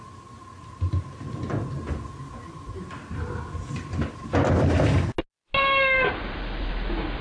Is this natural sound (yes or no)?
yes